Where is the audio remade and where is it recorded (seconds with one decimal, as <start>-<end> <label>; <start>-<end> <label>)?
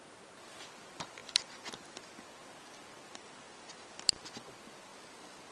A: 0.0-2.4 remade; 2.4-3.1 recorded; 3.1-4.9 remade; 4.9-5.5 recorded